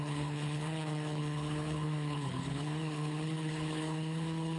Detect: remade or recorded remade